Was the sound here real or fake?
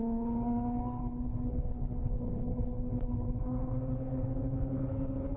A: fake